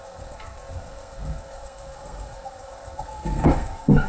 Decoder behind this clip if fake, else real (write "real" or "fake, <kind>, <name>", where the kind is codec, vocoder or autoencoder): fake, codec, SNAC